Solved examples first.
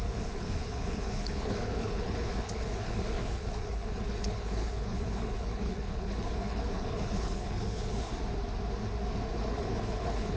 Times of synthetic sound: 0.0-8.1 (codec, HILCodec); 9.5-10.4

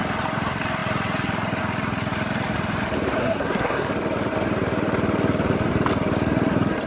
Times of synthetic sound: 3.2-3.9 (codec, SNAC)

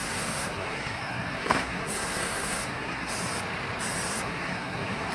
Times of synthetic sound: 0.0-3.1 (codec, SNAC); 4.1-5.1

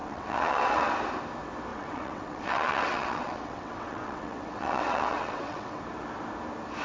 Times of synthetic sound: 0.0-0.9 (vocoder, WaveNeXt); 1.7-5.8